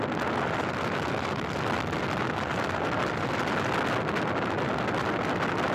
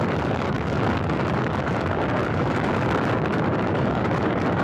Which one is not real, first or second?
second